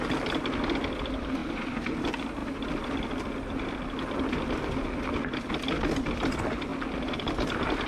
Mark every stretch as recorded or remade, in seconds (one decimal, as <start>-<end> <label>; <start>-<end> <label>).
0.0-7.9 recorded